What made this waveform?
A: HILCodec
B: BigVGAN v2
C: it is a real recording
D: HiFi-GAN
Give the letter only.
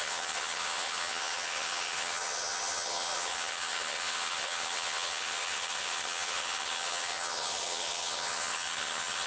D